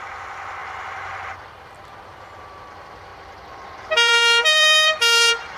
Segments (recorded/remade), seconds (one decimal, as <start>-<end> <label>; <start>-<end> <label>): 0.0-0.6 recorded; 0.6-1.3 remade; 1.3-3.1 recorded; 3.1-5.6 remade